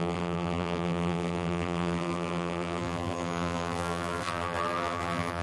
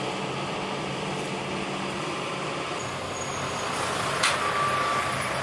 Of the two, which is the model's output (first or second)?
first